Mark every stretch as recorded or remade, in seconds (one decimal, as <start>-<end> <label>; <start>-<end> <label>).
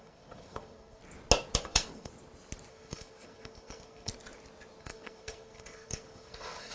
0.0-1.0 remade; 1.0-1.6 recorded; 1.6-2.1 remade; 2.1-2.7 recorded; 2.7-4.1 remade; 4.1-4.8 recorded; 4.8-6.7 remade